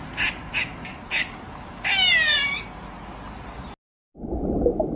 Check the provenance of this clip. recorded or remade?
recorded